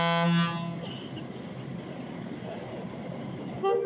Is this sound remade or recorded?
recorded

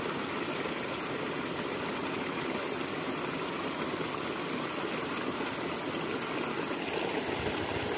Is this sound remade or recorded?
recorded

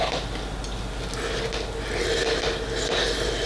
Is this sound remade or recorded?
recorded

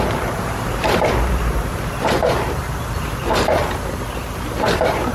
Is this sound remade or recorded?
remade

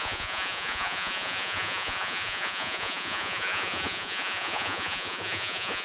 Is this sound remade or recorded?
remade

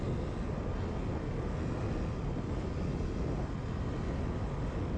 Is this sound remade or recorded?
recorded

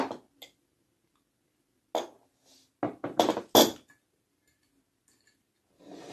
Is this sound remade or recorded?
recorded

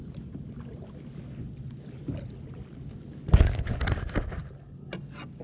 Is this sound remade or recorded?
recorded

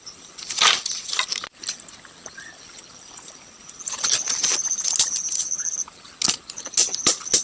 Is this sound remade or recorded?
recorded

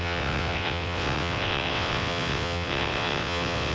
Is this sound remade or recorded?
remade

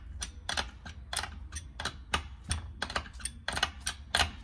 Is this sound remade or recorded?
recorded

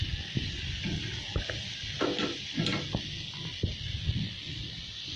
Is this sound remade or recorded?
recorded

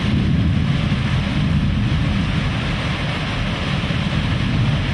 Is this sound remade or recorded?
recorded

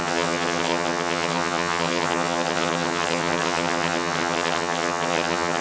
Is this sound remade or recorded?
remade